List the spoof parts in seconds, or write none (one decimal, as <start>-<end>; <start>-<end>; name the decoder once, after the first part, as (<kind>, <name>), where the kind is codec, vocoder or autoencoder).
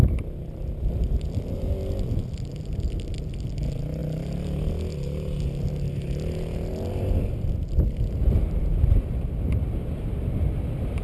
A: none